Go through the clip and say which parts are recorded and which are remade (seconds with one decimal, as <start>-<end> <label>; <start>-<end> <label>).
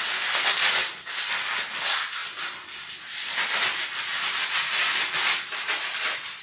0.0-6.4 recorded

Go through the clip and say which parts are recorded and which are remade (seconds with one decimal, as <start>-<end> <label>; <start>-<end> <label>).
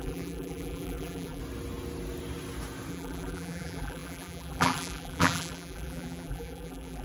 0.0-1.4 remade; 1.4-2.9 recorded; 2.9-7.0 remade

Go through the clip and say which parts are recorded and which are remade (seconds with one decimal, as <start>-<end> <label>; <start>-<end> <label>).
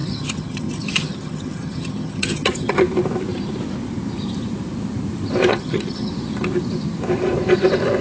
0.0-2.8 remade; 2.8-5.5 recorded; 5.5-6.1 remade; 6.1-8.0 recorded